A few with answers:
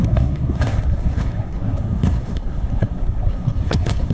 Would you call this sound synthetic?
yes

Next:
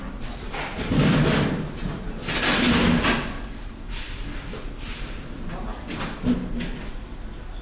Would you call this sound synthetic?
no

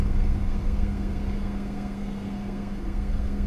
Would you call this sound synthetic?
yes